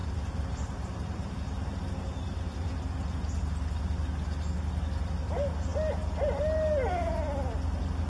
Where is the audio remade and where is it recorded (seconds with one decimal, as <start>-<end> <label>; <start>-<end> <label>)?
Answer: 0.0-8.1 recorded